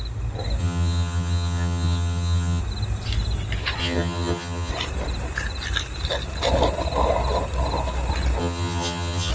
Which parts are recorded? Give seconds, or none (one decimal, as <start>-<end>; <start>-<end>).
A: 0.0-0.6; 2.6-3.8; 4.7-8.4